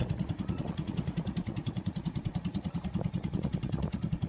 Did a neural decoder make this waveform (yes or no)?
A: yes